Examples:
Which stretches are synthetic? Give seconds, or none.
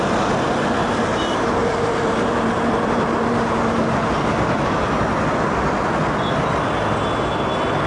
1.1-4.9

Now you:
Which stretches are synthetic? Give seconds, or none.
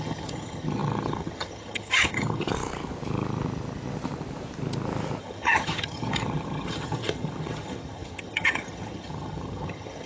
0.0-2.5; 5.2-10.1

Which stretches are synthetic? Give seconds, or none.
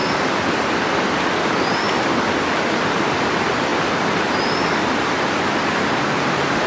none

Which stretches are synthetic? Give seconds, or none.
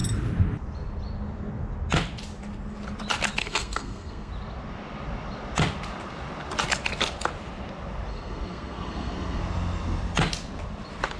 3.4-4.3; 8.1-9.4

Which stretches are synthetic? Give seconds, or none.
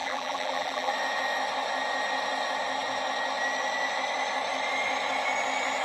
0.0-0.9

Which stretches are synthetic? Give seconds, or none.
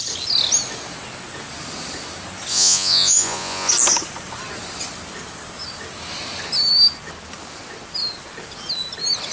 2.5-3.7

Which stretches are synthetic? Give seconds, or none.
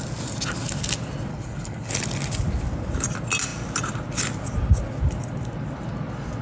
1.3-1.9